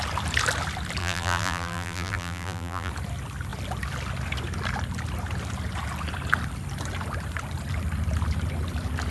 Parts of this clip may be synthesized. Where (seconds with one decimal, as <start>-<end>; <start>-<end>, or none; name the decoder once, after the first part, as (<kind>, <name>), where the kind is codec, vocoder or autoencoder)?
1.0-2.9 (vocoder, BigVGAN v2)